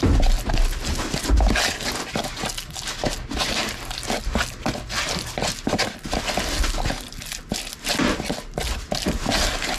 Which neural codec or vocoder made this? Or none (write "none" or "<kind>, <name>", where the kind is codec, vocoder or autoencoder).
none